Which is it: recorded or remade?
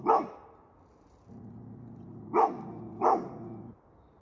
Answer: recorded